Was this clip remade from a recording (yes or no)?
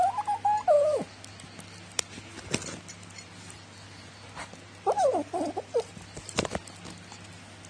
no